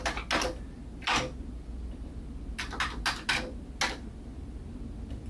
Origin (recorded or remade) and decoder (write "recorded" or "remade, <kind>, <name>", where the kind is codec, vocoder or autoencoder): recorded